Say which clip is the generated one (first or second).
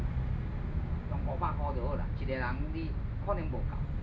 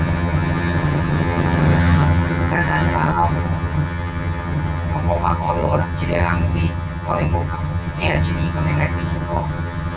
second